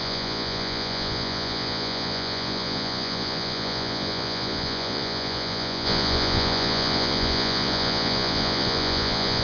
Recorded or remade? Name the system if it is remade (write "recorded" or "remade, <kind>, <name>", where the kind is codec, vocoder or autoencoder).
remade, vocoder, Vocos